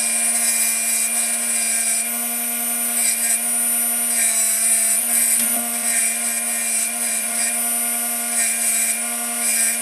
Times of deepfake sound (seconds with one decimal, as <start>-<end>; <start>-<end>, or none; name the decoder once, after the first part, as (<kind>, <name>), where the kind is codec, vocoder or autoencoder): 4.9-6.0 (vocoder, Vocos); 6.8-7.5